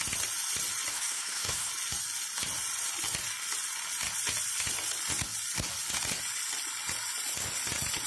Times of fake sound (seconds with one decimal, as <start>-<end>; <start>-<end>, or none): 0.9-1.7